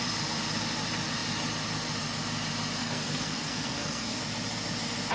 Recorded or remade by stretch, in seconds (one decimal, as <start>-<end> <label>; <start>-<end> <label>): 0.0-2.8 recorded; 2.8-4.2 remade; 4.2-5.1 recorded